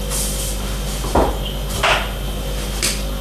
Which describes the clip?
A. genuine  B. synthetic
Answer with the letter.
A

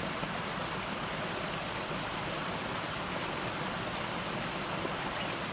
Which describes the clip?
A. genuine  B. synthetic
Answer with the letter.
A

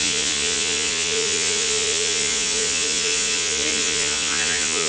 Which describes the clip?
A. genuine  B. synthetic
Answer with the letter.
B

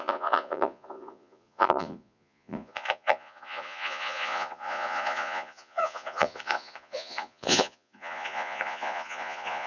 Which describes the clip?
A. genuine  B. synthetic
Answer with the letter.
B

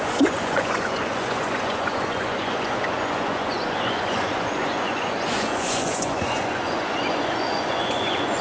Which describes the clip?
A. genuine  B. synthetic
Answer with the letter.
B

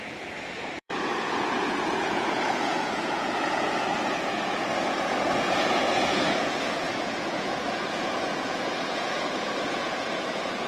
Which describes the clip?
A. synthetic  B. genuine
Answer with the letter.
A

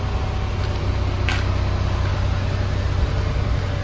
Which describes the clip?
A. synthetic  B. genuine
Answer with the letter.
B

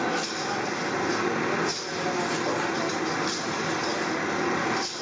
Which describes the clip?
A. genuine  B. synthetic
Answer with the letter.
A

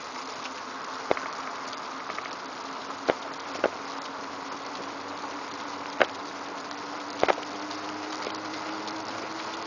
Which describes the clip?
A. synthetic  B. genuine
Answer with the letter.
B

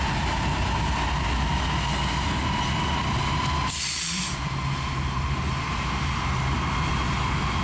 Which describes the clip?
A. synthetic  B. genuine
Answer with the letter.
B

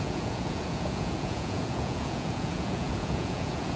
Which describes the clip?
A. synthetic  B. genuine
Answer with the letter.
A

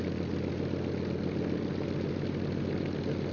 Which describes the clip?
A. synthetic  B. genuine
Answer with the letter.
B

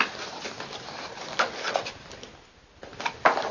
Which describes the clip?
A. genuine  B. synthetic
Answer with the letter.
A